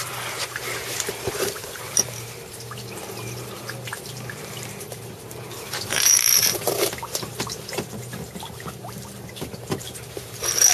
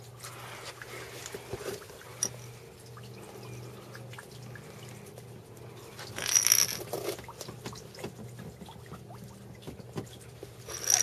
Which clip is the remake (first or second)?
first